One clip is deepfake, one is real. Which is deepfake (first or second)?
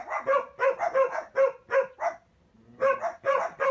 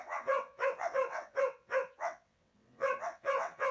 second